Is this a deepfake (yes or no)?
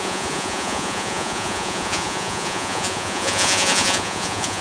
yes